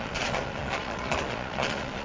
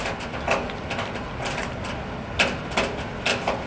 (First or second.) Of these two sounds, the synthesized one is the first